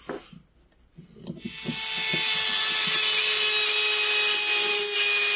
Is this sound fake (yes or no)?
no